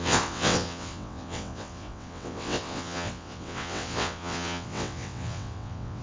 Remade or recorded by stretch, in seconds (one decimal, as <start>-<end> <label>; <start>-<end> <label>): 0.0-6.0 remade